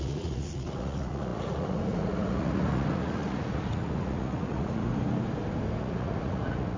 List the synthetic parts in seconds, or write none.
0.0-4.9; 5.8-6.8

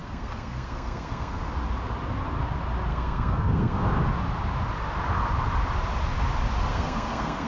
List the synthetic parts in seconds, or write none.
0.0-1.5; 2.9-4.0; 6.7-7.5

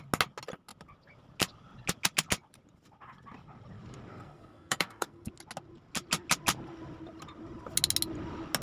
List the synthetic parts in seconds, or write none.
4.1-5.3

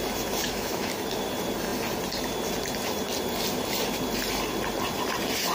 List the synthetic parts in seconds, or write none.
0.4-0.9